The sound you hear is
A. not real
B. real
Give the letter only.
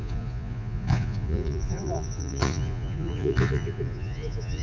A